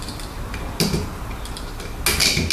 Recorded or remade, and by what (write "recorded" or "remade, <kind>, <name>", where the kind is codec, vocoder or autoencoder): recorded